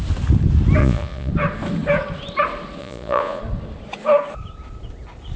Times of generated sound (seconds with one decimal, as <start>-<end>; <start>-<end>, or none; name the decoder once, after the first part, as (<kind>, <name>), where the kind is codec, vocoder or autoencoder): 0.8-1.3 (vocoder, Vocos); 2.8-3.4